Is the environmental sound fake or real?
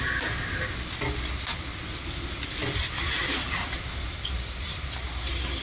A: real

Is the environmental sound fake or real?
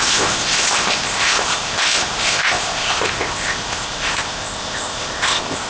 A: fake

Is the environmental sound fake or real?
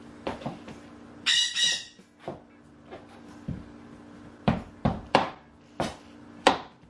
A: fake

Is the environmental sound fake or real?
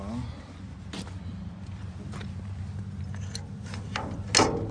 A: real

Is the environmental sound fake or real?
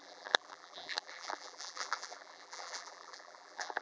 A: fake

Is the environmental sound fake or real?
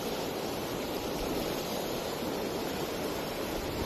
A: real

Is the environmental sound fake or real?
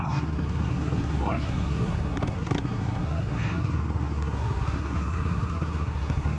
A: fake